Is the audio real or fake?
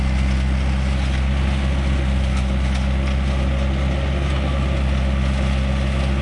real